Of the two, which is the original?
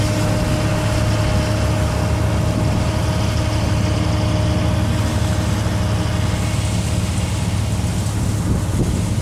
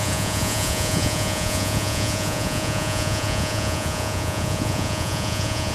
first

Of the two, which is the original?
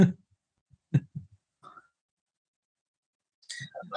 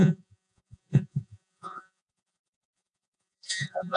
first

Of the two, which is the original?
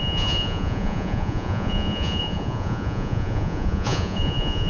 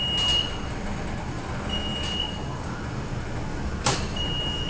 second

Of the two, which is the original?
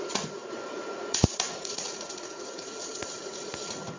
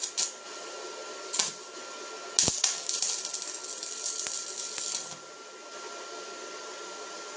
second